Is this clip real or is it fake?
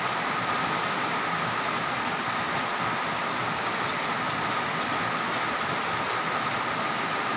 real